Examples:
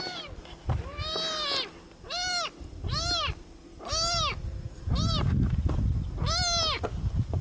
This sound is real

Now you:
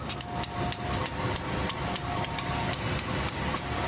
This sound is real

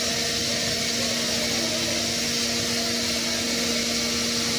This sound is real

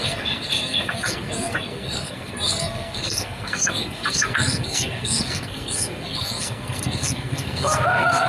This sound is fake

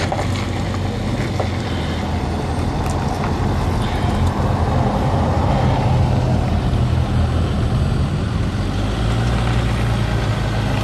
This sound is real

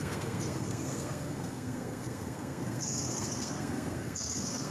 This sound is fake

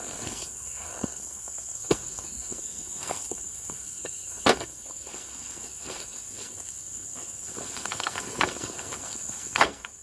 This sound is fake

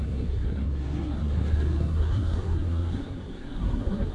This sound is fake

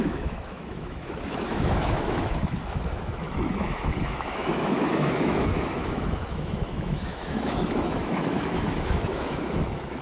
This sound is fake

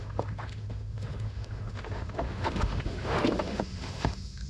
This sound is fake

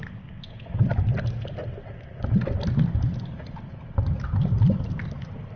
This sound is real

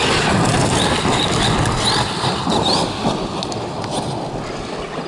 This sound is real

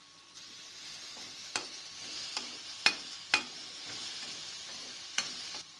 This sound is real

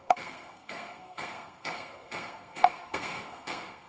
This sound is fake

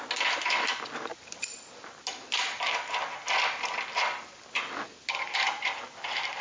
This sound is real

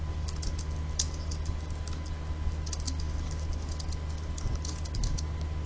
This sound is real